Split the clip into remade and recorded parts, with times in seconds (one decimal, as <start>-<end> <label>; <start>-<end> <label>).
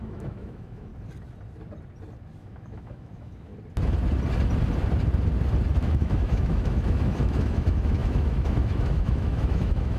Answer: 0.0-0.9 remade; 0.9-2.4 recorded; 2.4-3.5 remade; 3.5-5.8 recorded; 5.8-10.0 remade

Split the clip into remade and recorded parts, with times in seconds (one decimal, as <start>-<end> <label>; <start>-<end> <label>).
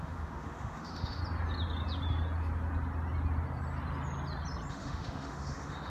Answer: 0.0-1.2 remade; 1.2-4.7 recorded; 4.7-5.9 remade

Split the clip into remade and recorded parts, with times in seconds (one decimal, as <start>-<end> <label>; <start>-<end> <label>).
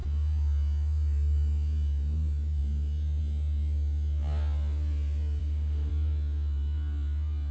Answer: 0.0-5.4 recorded; 5.4-5.9 remade; 5.9-7.5 recorded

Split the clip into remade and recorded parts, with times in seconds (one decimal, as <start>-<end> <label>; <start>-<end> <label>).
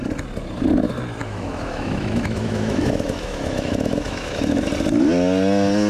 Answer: 0.0-1.2 recorded; 1.2-4.7 remade; 4.7-5.9 recorded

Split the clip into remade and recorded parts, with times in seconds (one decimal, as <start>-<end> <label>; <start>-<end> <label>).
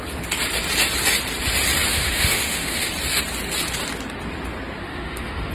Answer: 0.0-1.9 recorded; 1.9-2.9 remade; 2.9-4.8 recorded; 4.8-5.5 remade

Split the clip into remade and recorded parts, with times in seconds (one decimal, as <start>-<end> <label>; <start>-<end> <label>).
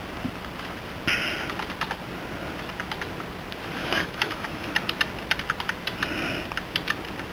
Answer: 0.0-3.8 recorded; 3.8-4.7 remade; 4.7-7.3 recorded